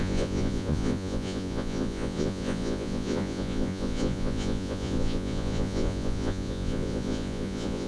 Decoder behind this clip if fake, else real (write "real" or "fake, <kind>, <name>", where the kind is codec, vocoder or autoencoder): fake, vocoder, Vocos